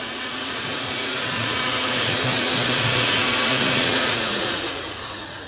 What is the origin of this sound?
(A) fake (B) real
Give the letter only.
A